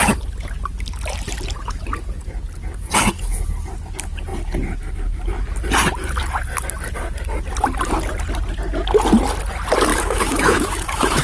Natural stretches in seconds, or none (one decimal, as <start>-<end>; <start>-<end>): 0.0-9.9